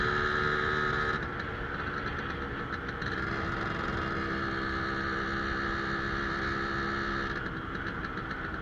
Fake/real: real